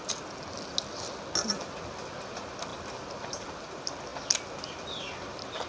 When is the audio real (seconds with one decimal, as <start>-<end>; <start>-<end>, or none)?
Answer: 0.0-5.7